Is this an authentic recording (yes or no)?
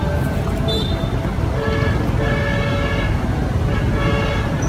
yes